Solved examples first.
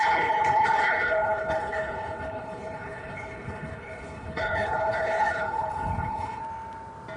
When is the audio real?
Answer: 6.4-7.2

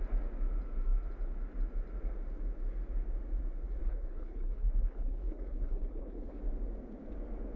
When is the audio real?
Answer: 0.0-3.8; 6.4-7.6

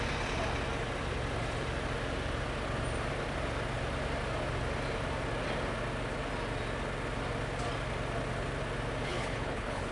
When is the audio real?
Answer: 0.0-9.1

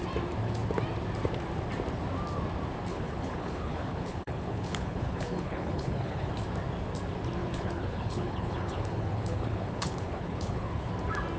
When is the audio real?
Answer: 0.0-2.9; 6.3-7.4; 10.9-11.4

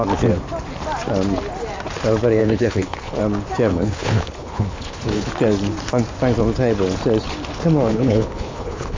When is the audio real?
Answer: 0.0-2.4; 3.2-3.7; 5.3-7.9

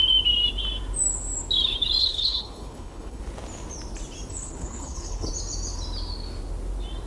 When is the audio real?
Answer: 0.0-2.0; 3.2-4.3; 5.3-7.1